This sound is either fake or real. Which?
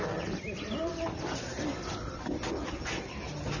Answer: real